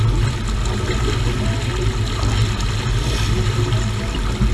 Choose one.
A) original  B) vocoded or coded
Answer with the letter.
A